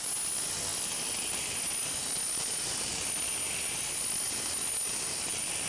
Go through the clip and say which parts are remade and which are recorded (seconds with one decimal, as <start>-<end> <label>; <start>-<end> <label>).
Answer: 0.0-5.7 recorded